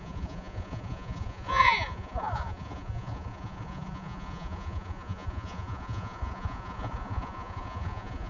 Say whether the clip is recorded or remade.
remade